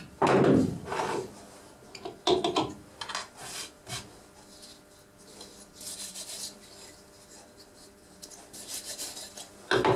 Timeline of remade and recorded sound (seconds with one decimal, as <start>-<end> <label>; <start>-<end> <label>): 0.0-10.0 recorded